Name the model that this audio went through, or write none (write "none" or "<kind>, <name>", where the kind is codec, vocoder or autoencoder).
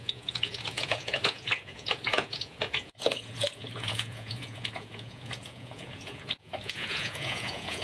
vocoder, Vocos